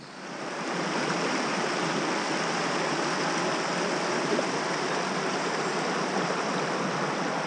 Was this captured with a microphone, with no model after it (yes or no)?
yes